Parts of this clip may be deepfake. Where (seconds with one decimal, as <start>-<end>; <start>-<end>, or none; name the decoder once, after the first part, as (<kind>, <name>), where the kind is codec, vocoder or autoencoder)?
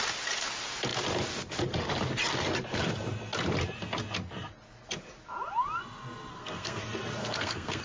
6.3-6.8 (codec, SNAC); 7.2-7.8